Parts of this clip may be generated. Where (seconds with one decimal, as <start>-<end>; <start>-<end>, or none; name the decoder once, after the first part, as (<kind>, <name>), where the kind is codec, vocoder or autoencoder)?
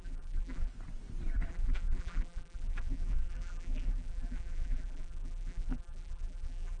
0.0-0.7 (vocoder, BigVGAN v2); 1.5-6.8